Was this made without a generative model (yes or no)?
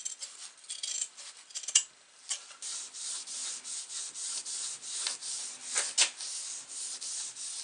yes